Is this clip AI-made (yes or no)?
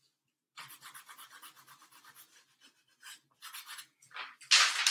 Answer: no